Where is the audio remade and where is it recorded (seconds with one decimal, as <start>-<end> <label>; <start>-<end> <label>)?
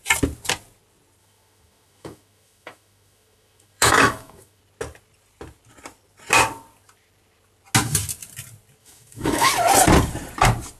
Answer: 0.0-1.2 recorded; 1.2-4.6 remade; 4.6-8.8 recorded; 8.8-9.5 remade; 9.5-10.8 recorded